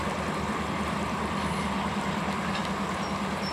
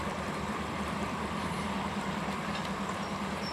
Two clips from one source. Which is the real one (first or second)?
first